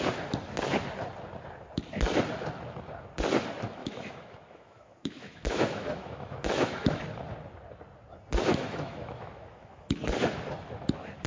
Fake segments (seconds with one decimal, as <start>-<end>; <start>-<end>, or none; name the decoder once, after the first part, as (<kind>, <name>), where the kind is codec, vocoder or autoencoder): 3.8-7.0 (autoencoder, DAC-VAE); 8.5-10.0